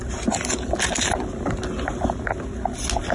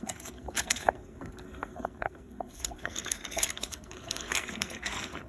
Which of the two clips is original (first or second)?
first